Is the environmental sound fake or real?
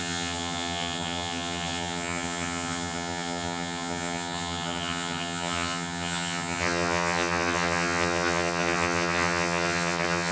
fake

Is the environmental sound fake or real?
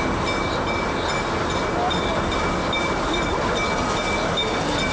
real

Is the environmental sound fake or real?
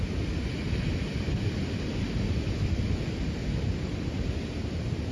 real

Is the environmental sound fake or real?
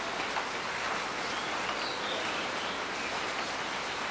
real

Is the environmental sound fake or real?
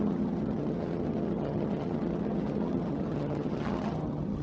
fake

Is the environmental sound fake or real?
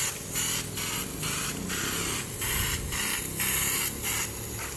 real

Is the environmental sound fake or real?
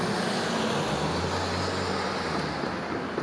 real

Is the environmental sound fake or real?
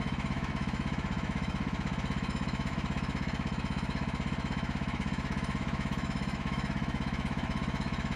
fake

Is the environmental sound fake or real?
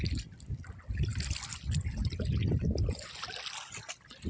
real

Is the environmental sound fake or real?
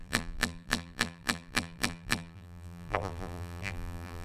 fake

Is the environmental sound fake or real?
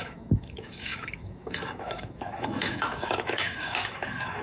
fake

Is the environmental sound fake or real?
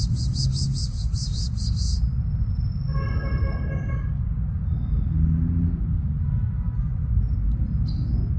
real